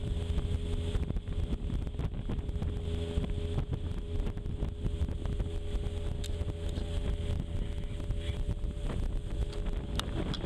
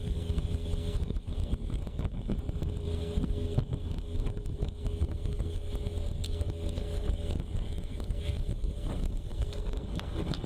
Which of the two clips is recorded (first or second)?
first